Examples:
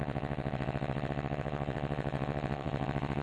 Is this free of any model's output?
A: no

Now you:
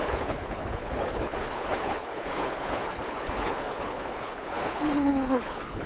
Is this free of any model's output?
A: no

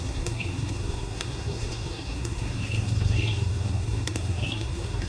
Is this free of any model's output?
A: no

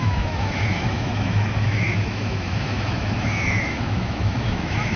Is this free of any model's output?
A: no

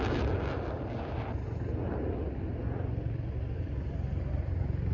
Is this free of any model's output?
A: yes